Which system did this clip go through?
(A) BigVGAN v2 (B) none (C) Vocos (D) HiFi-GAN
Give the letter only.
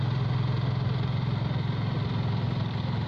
B